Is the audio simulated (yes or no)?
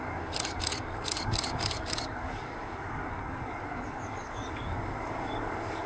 yes